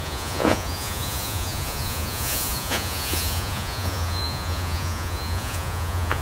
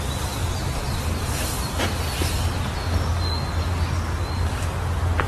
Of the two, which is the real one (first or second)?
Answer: second